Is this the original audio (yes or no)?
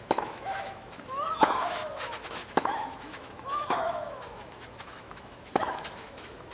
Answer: no